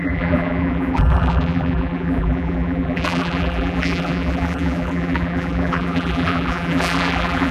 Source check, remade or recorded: remade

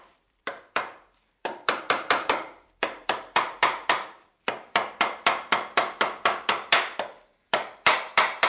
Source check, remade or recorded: remade